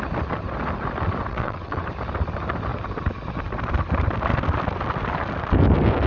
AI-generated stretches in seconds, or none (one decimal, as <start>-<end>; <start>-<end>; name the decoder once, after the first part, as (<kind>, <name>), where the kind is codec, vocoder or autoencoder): 1.3-1.8 (vocoder, WaveNeXt)